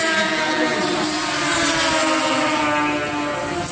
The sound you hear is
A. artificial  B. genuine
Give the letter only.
B